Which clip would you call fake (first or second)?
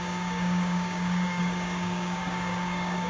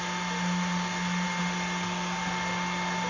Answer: first